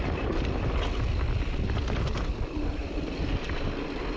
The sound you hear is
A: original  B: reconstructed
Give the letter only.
A